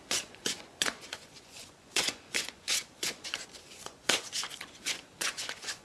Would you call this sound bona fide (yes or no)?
no